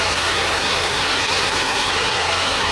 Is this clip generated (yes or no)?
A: yes